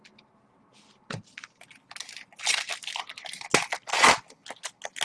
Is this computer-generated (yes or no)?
no